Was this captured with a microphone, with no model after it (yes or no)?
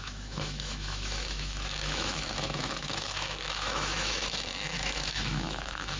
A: no